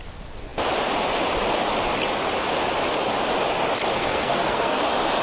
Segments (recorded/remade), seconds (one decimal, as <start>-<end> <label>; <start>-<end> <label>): 0.0-3.9 recorded; 3.9-4.8 remade; 4.8-5.2 recorded